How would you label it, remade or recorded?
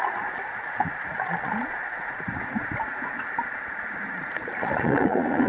remade